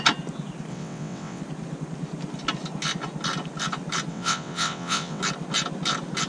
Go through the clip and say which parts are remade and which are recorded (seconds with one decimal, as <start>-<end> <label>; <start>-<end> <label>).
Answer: 0.0-0.7 recorded; 0.7-1.4 remade; 1.4-4.1 recorded; 4.1-5.2 remade; 5.2-6.3 recorded